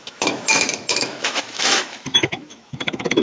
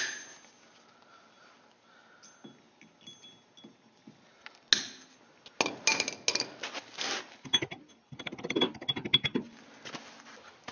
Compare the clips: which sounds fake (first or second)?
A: first